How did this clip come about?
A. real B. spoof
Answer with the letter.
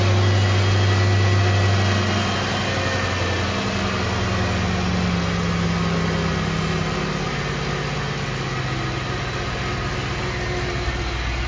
A